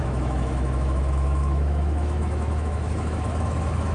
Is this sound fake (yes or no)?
yes